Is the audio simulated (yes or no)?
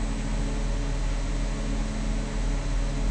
no